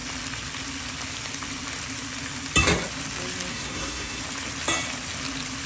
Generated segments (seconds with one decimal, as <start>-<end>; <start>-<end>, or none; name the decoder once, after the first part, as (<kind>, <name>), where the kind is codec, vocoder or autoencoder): 3.5-4.2 (codec, SNAC)